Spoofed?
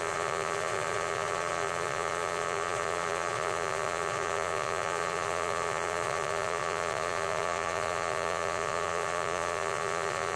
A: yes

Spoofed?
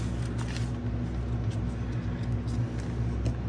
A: no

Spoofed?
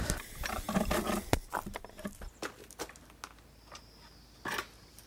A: no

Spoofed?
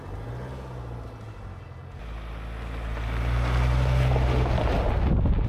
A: no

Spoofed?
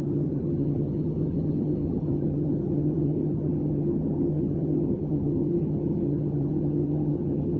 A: yes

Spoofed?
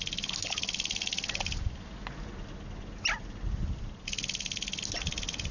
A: no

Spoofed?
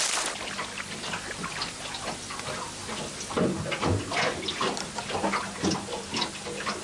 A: no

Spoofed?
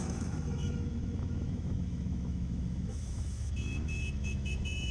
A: yes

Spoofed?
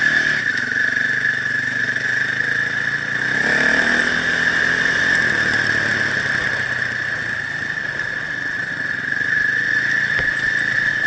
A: no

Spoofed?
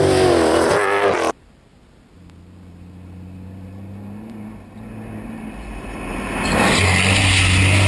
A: no